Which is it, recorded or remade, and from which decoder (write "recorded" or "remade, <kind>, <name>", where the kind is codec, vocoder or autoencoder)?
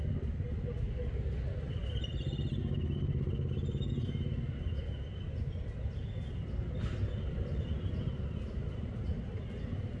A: recorded